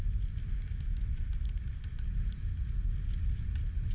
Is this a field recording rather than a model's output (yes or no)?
yes